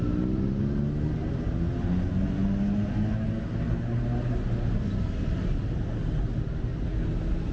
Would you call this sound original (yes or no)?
yes